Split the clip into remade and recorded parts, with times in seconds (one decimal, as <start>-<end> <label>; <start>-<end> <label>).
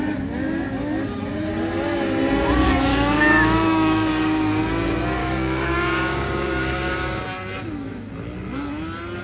0.0-2.9 recorded; 2.9-4.6 remade; 4.6-5.2 recorded; 5.2-7.2 remade; 7.2-9.2 recorded